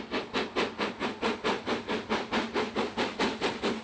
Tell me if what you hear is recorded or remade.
recorded